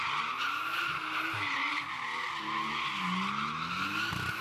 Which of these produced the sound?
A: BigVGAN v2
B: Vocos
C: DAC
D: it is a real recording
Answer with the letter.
D